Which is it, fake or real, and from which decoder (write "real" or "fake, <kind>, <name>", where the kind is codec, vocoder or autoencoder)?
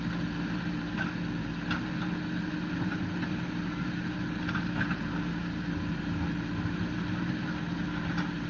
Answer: real